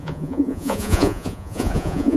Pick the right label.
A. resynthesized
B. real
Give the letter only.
A